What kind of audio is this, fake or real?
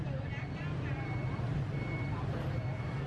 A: real